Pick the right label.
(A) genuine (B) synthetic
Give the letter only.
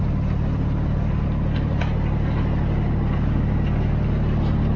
A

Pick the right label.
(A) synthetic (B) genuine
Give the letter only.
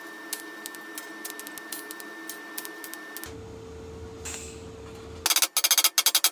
B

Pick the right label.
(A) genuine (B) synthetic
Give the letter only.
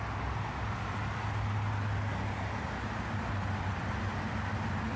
A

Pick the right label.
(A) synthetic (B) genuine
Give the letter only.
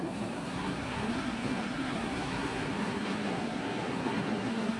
A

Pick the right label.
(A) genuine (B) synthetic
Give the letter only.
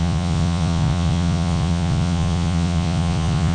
B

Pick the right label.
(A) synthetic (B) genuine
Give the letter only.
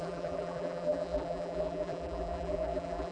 A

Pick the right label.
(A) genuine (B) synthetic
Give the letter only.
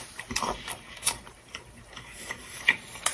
B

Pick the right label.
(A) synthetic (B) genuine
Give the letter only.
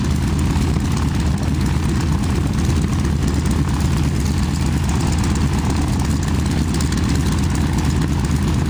B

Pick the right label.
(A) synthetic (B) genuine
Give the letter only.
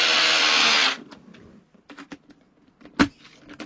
B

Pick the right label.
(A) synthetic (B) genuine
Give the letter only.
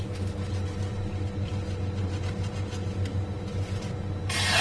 B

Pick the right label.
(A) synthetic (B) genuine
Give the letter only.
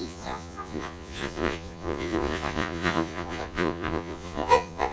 A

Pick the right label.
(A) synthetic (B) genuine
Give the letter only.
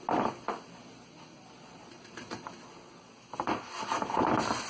B